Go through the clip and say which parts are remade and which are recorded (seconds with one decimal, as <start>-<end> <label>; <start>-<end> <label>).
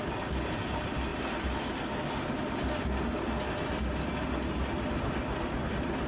0.0-6.1 recorded